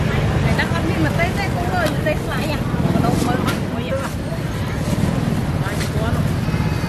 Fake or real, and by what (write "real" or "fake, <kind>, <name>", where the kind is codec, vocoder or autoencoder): real